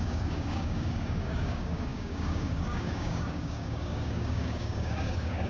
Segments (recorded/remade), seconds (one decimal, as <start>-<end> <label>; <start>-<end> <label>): 0.0-5.5 remade